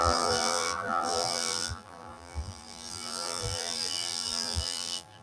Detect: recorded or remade remade